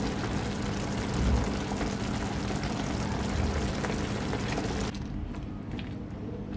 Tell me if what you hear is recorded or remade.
recorded